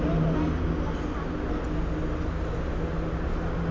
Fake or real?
real